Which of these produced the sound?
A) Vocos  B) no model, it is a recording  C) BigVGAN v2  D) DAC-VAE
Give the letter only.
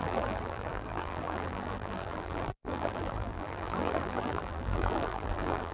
C